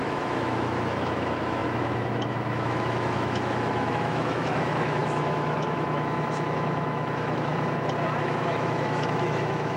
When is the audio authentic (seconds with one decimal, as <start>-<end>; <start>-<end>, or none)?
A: 7.5-8.2